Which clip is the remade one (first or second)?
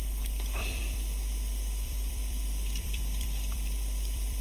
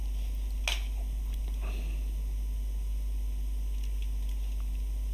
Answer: first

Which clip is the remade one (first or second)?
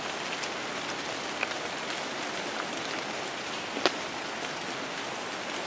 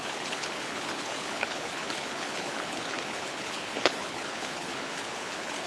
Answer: second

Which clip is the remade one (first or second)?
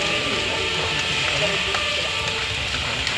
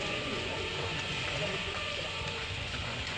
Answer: second